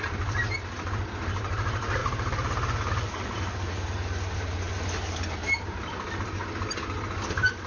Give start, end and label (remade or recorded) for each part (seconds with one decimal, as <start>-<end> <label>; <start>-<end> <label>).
0.0-2.0 recorded; 2.0-5.8 remade; 5.8-7.7 recorded